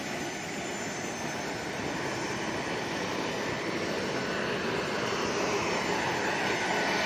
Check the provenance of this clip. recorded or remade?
recorded